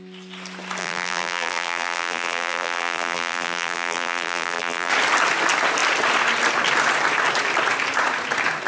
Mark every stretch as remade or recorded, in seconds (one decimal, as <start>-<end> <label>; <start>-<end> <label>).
0.0-0.8 recorded; 0.8-4.9 remade; 4.9-8.7 recorded